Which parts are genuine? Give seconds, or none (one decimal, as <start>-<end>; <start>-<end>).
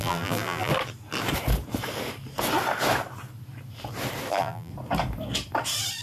0.7-4.3; 4.7-6.0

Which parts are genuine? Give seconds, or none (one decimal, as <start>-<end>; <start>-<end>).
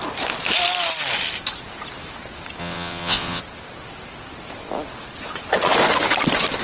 0.0-2.6; 3.4-6.6